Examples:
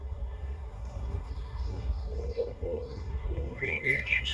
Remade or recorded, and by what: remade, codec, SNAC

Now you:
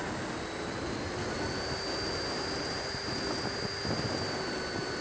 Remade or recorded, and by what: recorded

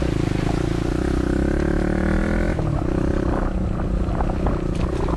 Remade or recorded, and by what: recorded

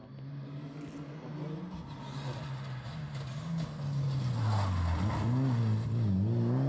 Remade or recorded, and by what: recorded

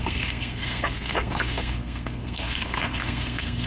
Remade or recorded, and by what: remade, codec, SNAC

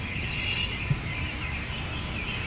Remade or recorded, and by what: recorded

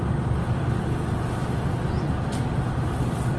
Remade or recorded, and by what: recorded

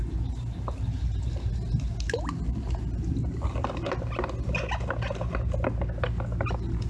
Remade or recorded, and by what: recorded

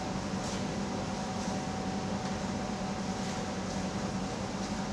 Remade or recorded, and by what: recorded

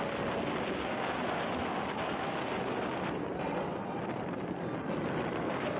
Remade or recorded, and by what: recorded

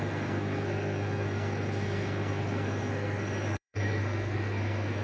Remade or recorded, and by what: remade, codec, SNAC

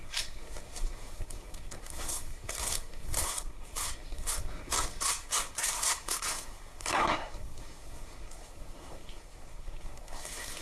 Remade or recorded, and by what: remade, codec, SNAC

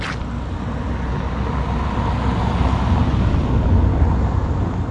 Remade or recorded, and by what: recorded